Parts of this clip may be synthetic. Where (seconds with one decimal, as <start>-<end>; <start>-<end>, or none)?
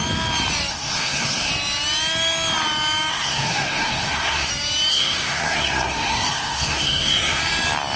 0.7-1.5; 3.1-4.5; 4.9-7.4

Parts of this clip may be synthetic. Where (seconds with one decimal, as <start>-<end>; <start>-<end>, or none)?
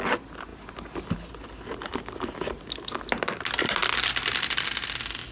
none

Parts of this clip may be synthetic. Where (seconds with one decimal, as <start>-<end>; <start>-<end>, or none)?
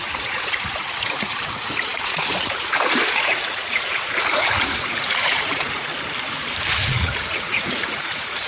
0.0-5.9; 6.7-8.5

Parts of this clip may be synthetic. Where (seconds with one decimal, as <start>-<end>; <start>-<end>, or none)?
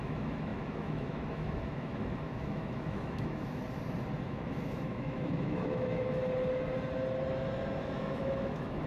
0.0-3.6; 4.3-6.2; 7.8-8.9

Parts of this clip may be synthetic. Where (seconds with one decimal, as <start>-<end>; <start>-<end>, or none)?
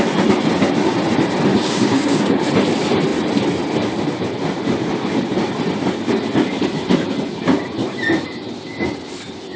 1.5-2.4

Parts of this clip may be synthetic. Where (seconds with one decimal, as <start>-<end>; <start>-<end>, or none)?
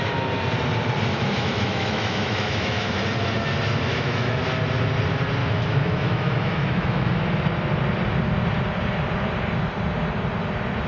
1.1-3.0; 3.9-4.4; 5.4-7.2